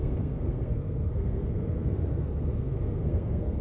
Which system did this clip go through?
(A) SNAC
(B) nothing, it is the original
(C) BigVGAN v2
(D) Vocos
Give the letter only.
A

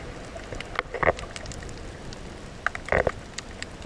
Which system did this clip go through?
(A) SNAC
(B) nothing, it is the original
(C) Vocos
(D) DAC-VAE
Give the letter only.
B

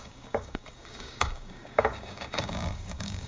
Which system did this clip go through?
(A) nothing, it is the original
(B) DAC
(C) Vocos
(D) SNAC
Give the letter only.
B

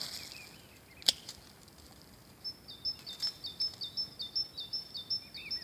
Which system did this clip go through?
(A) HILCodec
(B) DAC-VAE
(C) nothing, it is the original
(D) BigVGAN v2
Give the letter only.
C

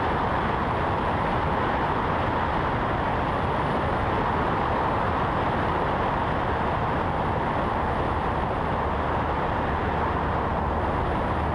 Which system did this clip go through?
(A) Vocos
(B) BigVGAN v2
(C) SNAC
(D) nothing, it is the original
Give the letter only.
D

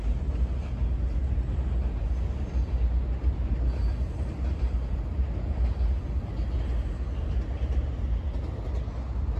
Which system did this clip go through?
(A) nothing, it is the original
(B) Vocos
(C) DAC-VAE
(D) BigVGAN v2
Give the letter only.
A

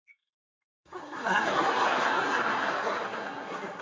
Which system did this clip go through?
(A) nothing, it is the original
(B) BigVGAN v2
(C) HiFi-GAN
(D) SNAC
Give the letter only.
D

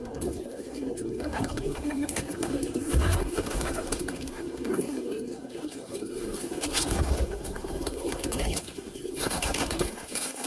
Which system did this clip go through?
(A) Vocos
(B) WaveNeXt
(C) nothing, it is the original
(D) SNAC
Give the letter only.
D